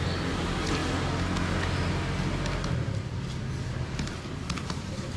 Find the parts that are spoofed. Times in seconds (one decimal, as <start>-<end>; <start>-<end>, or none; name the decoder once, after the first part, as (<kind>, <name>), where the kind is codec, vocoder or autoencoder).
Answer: 0.0-0.8 (vocoder, BigVGAN v2); 3.9-5.2